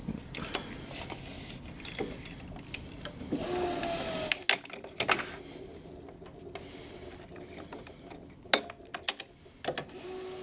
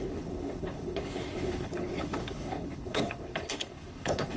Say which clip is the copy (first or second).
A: second